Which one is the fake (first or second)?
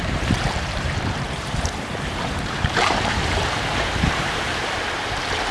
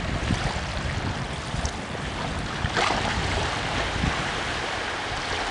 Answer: first